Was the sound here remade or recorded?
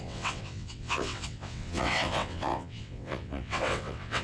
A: remade